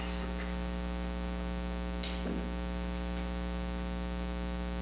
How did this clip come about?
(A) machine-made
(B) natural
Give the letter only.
B